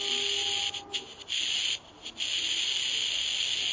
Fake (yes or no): no